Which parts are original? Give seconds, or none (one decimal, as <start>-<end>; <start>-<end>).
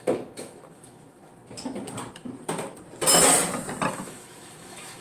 1.3-3.9